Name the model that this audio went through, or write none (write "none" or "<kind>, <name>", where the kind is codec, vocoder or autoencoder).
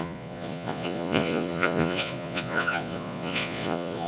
vocoder, Vocos